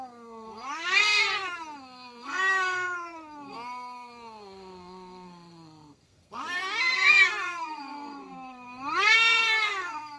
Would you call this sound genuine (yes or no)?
no